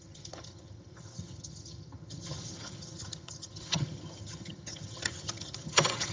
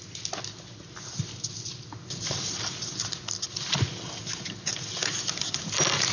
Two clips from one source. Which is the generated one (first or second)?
first